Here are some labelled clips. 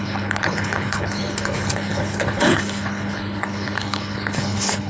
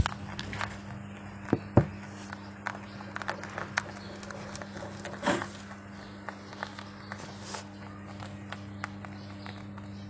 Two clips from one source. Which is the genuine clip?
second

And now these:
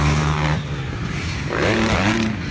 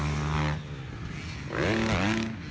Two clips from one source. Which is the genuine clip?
second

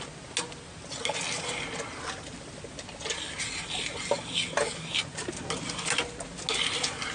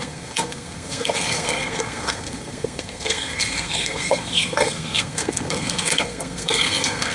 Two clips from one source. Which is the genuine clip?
first